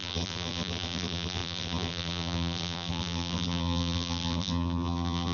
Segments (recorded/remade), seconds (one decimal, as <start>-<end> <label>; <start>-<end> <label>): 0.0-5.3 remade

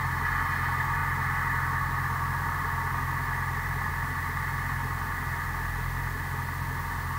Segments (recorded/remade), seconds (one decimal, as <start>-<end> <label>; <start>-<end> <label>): 0.0-7.2 recorded

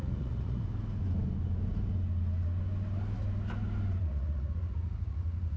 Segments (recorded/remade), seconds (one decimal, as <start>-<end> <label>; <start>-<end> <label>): 0.0-0.6 remade; 0.6-4.0 recorded; 4.0-5.6 remade

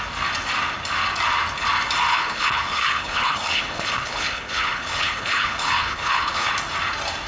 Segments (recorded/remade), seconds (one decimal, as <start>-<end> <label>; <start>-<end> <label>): 0.0-2.1 recorded; 2.1-6.5 remade; 6.5-7.3 recorded